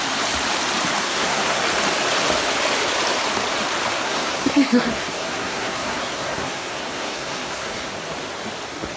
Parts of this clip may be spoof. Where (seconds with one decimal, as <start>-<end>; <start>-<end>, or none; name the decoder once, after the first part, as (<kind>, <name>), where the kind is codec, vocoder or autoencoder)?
1.0-1.6 (codec, SNAC); 4.0-7.9